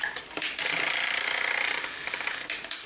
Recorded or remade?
recorded